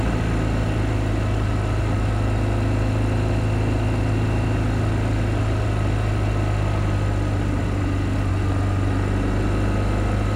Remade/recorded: recorded